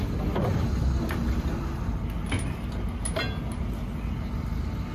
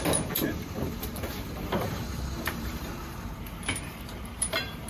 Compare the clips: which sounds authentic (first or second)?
first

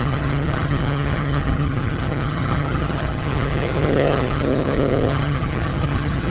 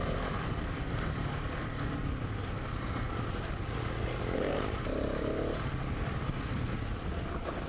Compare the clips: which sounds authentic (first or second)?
second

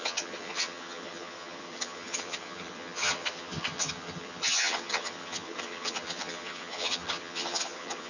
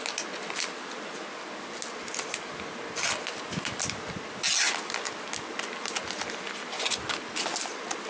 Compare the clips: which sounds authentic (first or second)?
second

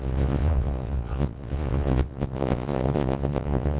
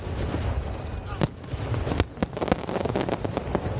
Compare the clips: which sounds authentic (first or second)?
second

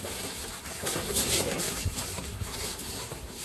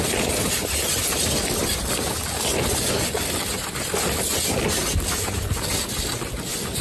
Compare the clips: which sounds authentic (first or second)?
second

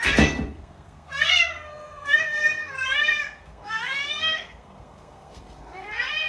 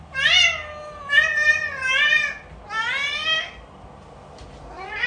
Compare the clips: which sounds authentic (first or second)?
second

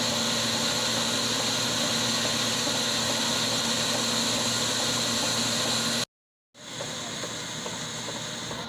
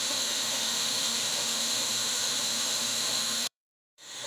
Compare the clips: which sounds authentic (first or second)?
first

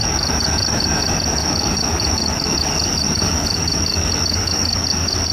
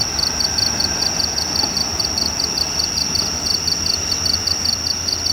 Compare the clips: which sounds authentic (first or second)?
second